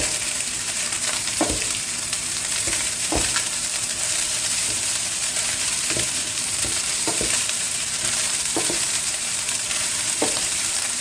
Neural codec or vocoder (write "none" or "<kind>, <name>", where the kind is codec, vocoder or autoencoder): vocoder, BigVGAN v2